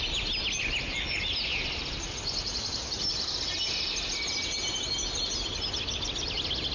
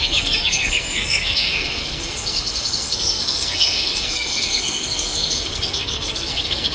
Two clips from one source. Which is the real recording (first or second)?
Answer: first